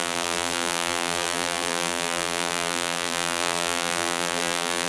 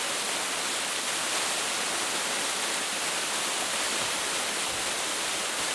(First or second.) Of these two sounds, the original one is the second